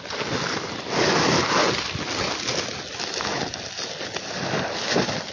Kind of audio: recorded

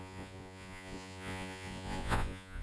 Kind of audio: remade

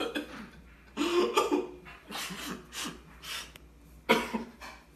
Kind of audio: recorded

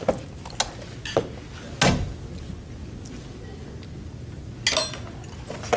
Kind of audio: recorded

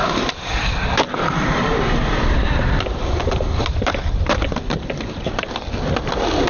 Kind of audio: recorded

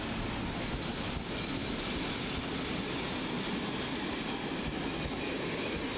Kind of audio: recorded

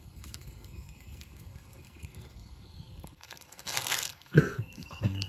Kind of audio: remade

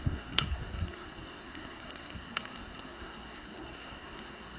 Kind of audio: remade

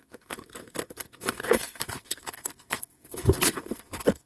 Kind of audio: remade